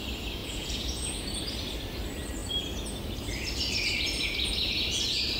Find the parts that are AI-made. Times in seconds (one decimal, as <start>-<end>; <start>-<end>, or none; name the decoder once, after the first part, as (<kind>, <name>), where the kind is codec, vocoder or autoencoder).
0.4-1.1 (vocoder, Vocos)